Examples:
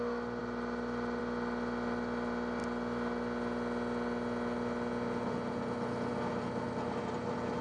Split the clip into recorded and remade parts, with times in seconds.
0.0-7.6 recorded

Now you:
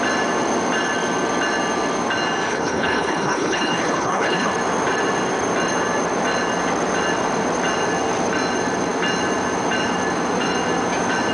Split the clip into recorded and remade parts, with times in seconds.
0.0-2.5 recorded; 2.5-4.5 remade; 4.5-11.3 recorded